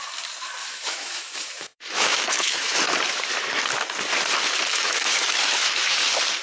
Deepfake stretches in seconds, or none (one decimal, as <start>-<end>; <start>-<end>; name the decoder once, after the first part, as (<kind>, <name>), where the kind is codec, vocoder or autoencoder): 0.6-2.8 (autoencoder, DAC-VAE); 4.7-6.0